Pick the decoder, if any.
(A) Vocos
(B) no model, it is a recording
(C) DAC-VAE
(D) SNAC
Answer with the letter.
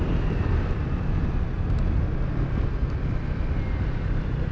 B